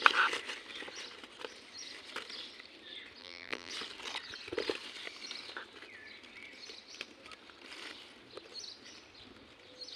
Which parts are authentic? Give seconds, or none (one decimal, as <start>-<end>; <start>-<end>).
0.0-3.2; 3.7-10.0